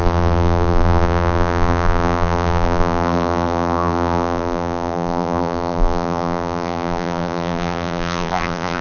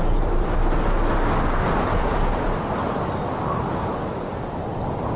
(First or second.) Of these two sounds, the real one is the second